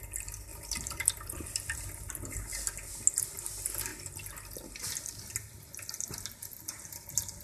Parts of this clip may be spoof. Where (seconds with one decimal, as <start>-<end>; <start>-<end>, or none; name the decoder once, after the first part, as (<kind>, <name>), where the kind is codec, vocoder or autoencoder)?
0.5-1.0 (vocoder, BigVGAN v2)